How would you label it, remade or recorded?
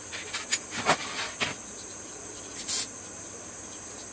recorded